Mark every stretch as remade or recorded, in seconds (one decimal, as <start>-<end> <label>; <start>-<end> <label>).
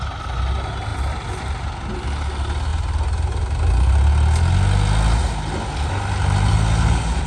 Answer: 0.0-7.3 recorded